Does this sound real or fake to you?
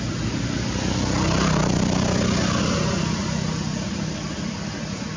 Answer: real